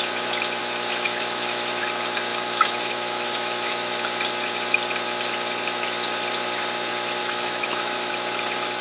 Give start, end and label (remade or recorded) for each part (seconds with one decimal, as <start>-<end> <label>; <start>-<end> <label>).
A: 0.0-0.6 recorded; 0.6-1.8 remade; 1.8-2.3 recorded; 2.3-3.9 remade; 3.9-7.2 recorded; 7.2-8.1 remade; 8.1-8.8 recorded